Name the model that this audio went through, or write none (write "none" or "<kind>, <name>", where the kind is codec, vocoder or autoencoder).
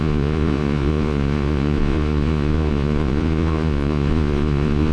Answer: vocoder, Vocos